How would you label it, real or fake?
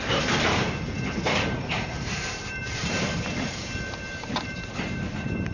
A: fake